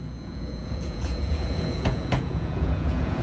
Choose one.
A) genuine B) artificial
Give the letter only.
B